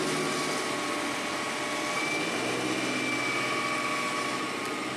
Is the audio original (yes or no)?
yes